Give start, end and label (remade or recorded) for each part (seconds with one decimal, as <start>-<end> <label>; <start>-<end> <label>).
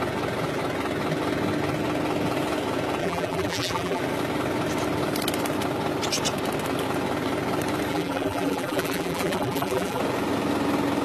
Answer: 0.0-3.0 recorded; 3.0-4.0 remade; 4.0-7.9 recorded; 7.9-10.0 remade; 10.0-11.0 recorded